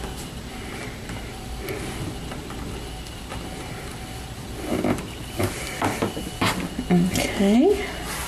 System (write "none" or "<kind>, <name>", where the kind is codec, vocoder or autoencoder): none